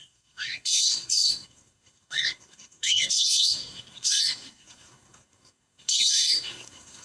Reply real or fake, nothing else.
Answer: fake